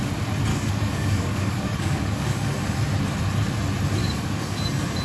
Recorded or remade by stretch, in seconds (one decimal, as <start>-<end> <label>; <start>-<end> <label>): 0.0-0.5 recorded; 0.5-2.5 remade; 2.5-4.0 recorded; 4.0-4.6 remade; 4.6-5.0 recorded